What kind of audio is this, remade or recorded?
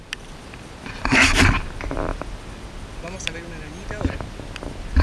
recorded